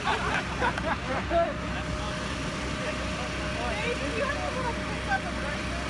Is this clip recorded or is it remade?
recorded